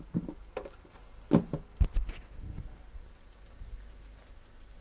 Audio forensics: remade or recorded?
recorded